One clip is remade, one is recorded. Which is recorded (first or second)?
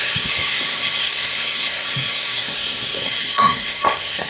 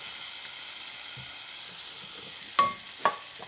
second